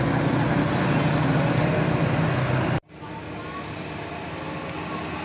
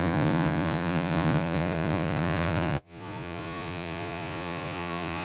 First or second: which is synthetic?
second